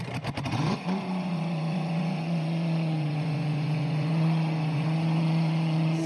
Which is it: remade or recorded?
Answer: remade